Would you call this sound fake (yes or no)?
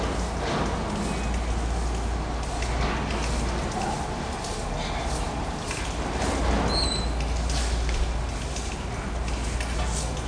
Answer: no